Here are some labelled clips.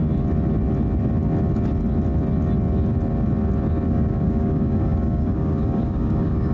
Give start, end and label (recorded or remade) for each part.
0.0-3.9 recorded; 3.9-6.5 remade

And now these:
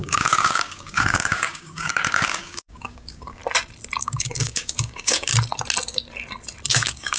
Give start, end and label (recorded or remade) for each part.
0.0-3.4 remade; 3.4-4.0 recorded; 4.0-5.3 remade; 5.3-6.7 recorded; 6.7-7.2 remade

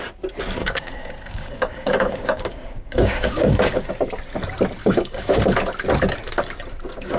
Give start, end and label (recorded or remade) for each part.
0.0-0.6 recorded; 0.6-3.9 remade; 3.9-4.8 recorded; 4.8-5.4 remade; 5.4-7.2 recorded

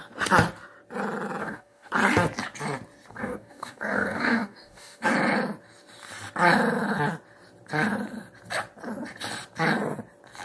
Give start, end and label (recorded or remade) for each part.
0.0-1.4 recorded; 1.4-1.9 remade; 1.9-3.1 recorded; 3.1-5.1 remade; 5.1-10.4 recorded

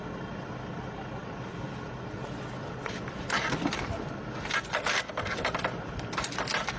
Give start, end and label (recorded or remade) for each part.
0.0-6.8 recorded

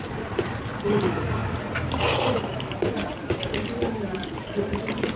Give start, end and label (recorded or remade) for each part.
0.0-5.2 recorded

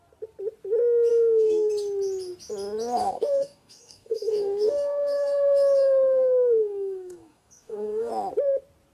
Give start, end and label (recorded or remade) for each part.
0.0-1.1 recorded; 1.1-1.7 remade; 1.7-3.0 recorded; 3.0-8.1 remade; 8.1-8.9 recorded

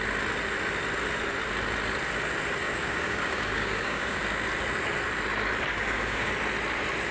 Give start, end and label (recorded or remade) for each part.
0.0-2.6 recorded; 2.6-4.2 remade; 4.2-5.7 recorded; 5.7-6.3 remade; 6.3-7.1 recorded